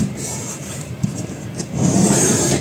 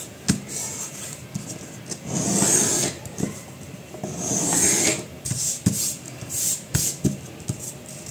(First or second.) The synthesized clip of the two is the first